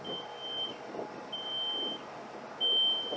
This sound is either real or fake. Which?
real